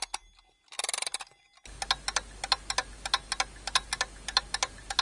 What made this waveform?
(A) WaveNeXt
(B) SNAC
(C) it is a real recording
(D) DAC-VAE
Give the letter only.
C